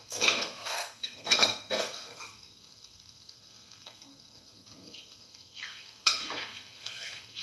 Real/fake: fake